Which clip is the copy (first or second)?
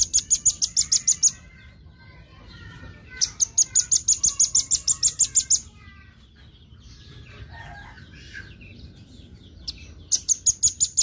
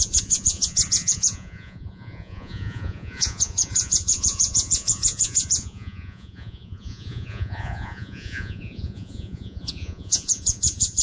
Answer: second